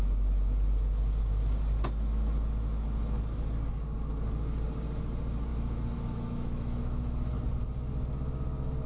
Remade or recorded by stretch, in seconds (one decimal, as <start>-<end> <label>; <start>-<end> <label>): 0.0-5.5 recorded; 5.5-7.4 remade; 7.4-8.9 recorded